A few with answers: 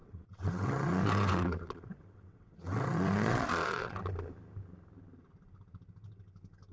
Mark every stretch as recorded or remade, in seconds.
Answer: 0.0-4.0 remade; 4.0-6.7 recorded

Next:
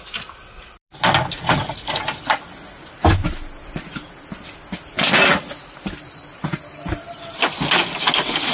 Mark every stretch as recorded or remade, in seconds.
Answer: 0.0-8.5 recorded

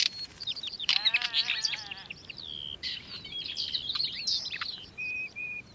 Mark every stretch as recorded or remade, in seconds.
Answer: 0.0-1.1 remade; 1.1-4.5 recorded; 4.5-5.7 remade

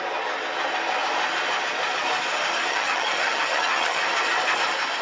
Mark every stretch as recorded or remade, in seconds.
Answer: 0.0-2.7 recorded; 2.7-4.0 remade; 4.0-5.0 recorded

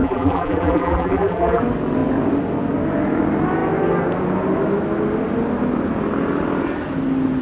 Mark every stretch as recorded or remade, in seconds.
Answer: 0.0-1.6 remade; 1.6-7.4 recorded

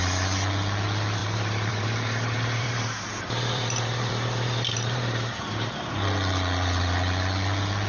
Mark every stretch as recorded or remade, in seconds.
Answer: 0.0-1.2 recorded; 1.2-5.7 remade; 5.7-7.9 recorded

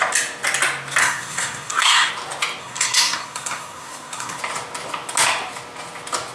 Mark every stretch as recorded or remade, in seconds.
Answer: 0.0-1.0 recorded; 1.0-2.1 remade; 2.1-2.6 recorded; 2.6-4.4 remade; 4.4-6.3 recorded